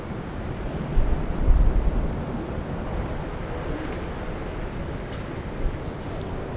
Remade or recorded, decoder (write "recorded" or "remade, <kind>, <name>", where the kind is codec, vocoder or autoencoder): recorded